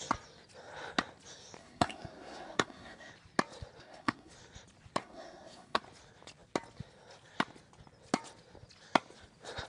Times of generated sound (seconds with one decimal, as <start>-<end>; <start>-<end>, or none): 1.6-3.1; 3.8-4.3; 5.0-5.8